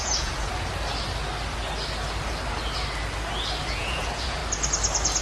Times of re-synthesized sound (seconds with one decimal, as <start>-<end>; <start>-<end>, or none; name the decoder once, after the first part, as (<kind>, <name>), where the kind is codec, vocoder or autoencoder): 0.0-0.5 (vocoder, Vocos); 3.6-4.4